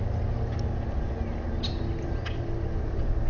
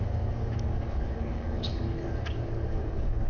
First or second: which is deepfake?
second